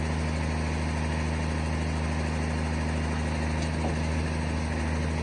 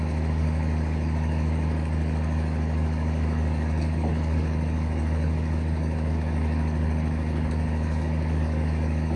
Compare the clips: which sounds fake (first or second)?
second